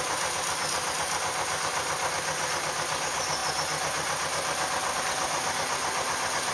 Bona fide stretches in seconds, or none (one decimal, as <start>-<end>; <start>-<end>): 0.0-6.5